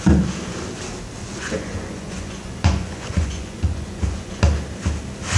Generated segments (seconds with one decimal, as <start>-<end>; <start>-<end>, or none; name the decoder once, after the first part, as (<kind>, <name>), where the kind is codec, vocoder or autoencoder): 1.2-4.4 (vocoder, Vocos)